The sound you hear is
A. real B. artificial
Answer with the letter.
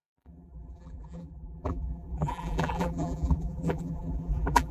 B